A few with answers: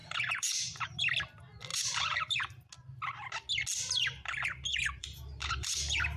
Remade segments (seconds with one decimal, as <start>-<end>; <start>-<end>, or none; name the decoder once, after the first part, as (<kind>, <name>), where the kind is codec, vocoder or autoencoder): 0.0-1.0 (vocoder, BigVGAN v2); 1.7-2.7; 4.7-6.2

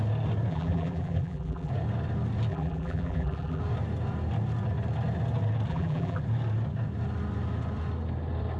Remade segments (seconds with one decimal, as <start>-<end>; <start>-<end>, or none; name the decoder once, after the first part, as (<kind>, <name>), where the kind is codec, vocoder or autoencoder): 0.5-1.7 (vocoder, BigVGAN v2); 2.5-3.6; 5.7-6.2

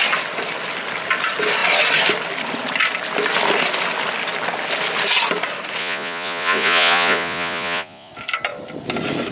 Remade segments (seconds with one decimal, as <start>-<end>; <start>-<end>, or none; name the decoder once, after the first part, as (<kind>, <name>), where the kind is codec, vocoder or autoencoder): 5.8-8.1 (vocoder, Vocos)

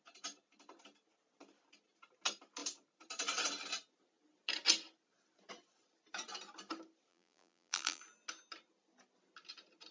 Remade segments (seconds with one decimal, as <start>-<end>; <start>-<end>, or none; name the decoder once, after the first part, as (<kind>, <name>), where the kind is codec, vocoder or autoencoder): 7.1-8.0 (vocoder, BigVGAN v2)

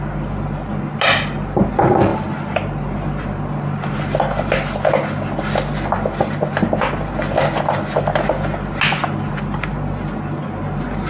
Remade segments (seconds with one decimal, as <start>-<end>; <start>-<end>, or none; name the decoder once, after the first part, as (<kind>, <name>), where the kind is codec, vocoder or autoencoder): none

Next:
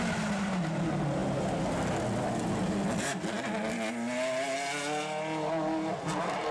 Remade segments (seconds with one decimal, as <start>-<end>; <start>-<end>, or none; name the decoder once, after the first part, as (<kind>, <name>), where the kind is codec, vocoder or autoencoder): none

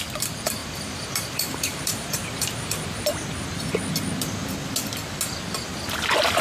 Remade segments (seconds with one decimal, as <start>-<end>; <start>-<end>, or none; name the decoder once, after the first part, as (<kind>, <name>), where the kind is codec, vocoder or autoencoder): 0.6-3.1 (vocoder, BigVGAN v2)

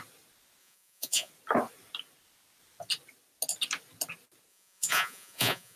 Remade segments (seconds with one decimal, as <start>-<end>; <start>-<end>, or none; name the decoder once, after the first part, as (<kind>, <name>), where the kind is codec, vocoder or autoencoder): 0.6-1.3 (vocoder, Vocos); 4.5-5.8